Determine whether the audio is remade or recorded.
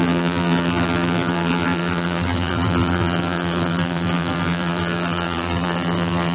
remade